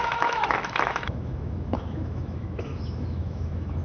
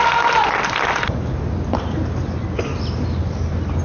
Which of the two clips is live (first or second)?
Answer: second